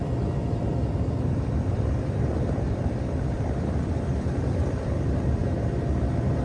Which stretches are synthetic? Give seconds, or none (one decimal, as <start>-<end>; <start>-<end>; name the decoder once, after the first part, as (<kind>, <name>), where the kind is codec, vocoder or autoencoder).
0.0-5.4 (vocoder, BigVGAN v2)